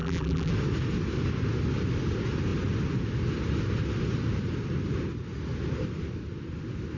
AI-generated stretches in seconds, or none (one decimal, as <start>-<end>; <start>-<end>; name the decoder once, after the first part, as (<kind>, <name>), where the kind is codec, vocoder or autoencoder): 0.0-0.5 (vocoder, BigVGAN v2)